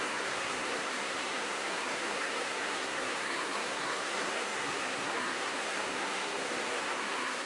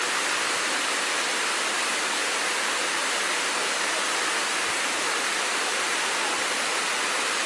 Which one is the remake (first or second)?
first